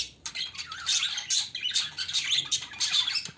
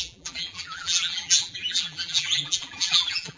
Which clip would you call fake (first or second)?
second